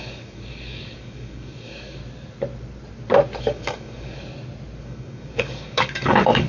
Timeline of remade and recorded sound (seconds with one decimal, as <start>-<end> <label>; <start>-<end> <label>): 0.0-2.0 remade; 2.0-3.4 recorded; 3.4-4.3 remade; 4.3-4.8 recorded; 4.8-6.5 remade